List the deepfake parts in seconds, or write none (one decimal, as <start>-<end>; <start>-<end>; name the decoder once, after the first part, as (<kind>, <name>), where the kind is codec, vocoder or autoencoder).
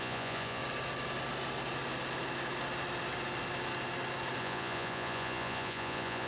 0.0-0.6 (vocoder, Vocos); 4.4-6.3